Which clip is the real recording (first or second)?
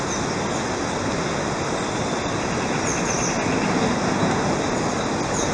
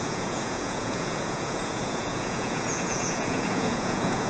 first